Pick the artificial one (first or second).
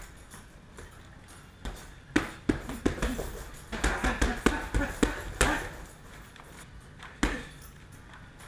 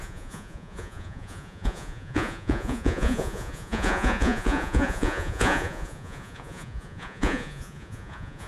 second